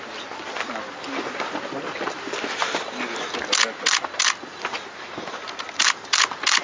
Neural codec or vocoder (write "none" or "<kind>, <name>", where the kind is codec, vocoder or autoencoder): none